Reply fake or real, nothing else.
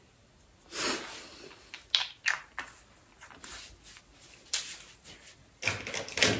real